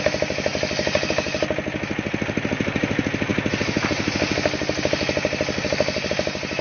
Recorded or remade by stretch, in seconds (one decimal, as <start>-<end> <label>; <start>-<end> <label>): 0.0-6.6 recorded